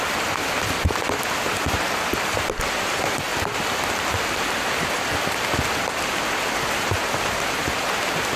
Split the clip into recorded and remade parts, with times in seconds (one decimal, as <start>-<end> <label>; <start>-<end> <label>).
0.0-8.4 recorded